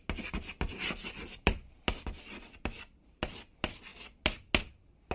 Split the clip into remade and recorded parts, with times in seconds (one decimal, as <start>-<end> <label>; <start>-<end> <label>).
0.0-5.1 recorded